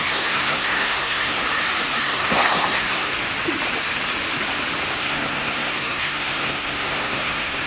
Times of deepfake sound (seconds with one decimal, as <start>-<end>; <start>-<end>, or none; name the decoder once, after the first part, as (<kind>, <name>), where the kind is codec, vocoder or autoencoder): 0.0-1.4 (codec, SNAC); 2.0-3.1; 5.0-7.7